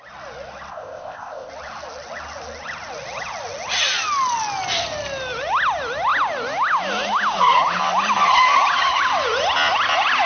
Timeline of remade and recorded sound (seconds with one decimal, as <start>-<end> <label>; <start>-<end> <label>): 0.0-0.7 recorded; 0.7-1.5 remade; 1.5-10.3 recorded

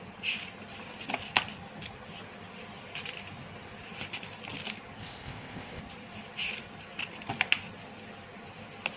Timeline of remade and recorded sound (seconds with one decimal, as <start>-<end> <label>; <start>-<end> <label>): 0.0-5.0 recorded; 5.0-5.8 remade; 5.8-9.0 recorded

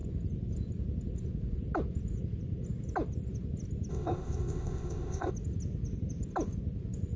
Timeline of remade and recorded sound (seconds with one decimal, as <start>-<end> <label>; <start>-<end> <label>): 0.0-3.9 recorded; 3.9-5.3 remade; 5.3-7.2 recorded